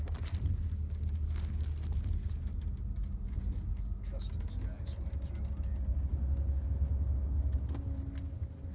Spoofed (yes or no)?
no